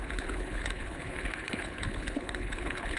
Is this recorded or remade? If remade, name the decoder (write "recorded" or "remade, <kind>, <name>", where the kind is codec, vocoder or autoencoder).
remade, codec, HILCodec